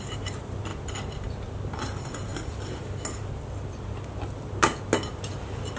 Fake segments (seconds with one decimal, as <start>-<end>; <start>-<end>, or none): 0.0-0.7; 1.8-2.3